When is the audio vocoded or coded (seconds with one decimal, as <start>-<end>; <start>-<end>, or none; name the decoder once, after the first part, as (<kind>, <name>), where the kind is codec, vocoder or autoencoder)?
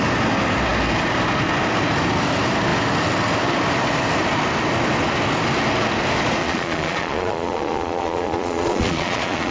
6.4-9.5 (vocoder, Vocos)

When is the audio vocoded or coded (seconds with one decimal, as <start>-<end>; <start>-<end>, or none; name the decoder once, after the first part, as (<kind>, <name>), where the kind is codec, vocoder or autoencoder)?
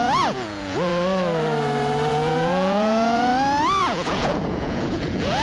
0.0-0.9 (vocoder, Vocos); 2.1-3.3; 3.8-5.4